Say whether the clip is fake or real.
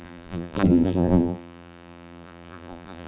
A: fake